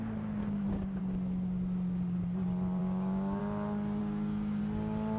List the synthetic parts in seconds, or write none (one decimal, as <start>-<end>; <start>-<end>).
0.4-1.0; 2.8-3.4; 4.0-4.6